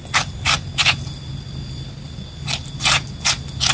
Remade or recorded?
recorded